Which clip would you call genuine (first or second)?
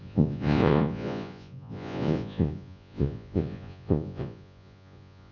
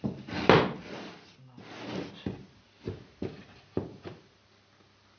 second